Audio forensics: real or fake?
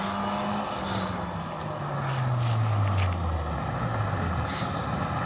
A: real